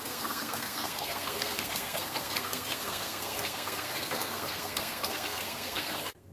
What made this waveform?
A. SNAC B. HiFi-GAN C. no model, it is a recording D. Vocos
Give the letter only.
A